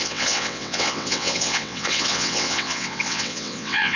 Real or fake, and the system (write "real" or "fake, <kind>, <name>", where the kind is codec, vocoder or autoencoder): fake, vocoder, WaveNeXt